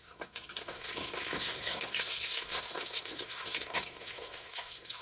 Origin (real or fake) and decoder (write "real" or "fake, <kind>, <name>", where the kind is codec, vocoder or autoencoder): fake, codec, SNAC